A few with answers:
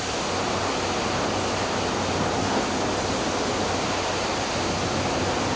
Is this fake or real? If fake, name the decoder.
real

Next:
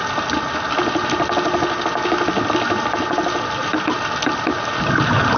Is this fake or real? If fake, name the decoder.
real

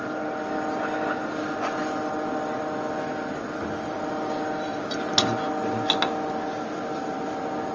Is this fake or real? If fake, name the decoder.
real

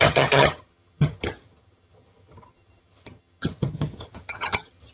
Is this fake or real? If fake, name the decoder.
fake, vocoder, HiFi-GAN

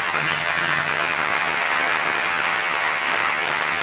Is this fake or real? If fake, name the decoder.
fake, vocoder, HiFi-GAN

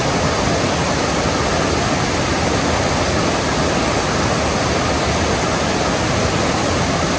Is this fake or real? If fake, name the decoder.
real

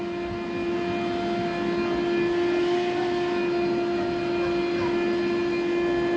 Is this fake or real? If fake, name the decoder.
real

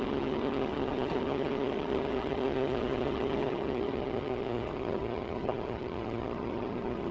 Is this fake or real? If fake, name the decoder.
fake, vocoder, HiFi-GAN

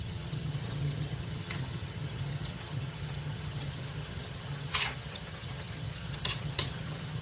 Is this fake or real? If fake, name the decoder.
fake, vocoder, HiFi-GAN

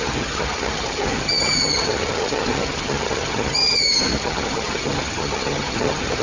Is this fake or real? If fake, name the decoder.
fake, vocoder, HiFi-GAN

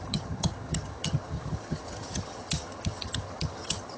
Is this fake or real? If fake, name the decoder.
fake, vocoder, HiFi-GAN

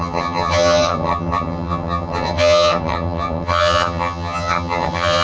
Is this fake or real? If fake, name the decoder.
fake, vocoder, HiFi-GAN